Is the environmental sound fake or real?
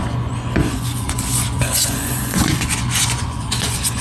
fake